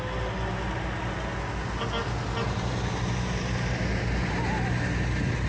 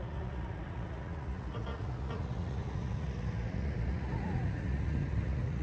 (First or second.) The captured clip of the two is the first